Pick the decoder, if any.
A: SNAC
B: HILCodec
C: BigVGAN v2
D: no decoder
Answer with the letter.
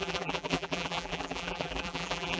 C